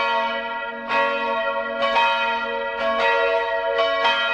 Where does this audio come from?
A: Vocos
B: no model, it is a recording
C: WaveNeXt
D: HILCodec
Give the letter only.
B